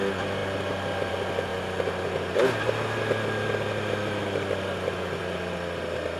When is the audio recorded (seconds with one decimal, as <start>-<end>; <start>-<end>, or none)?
0.0-6.2